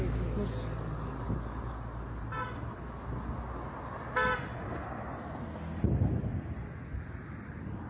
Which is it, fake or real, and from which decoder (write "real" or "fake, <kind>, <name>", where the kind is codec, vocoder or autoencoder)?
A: real